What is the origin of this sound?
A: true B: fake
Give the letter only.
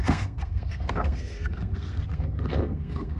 B